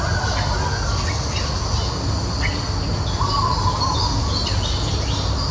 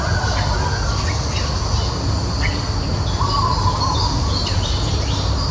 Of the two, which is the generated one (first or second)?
second